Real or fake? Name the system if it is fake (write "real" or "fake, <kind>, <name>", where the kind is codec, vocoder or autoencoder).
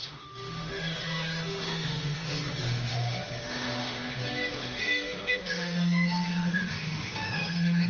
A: fake, autoencoder, DAC-VAE